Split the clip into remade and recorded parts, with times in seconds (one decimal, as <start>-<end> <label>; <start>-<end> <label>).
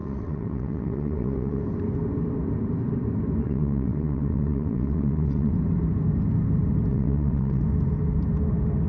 0.0-1.6 remade; 1.6-3.4 recorded; 3.4-5.5 remade; 5.5-6.9 recorded; 6.9-7.6 remade; 7.6-8.9 recorded